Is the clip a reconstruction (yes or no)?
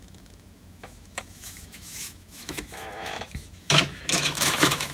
yes